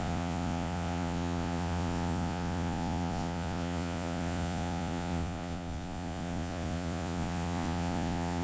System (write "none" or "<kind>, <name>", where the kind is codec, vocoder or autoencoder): vocoder, Vocos